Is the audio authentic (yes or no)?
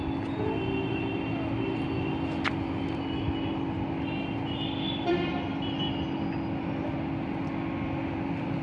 yes